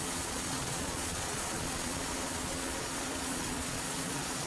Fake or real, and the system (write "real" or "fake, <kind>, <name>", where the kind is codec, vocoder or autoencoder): fake, vocoder, Vocos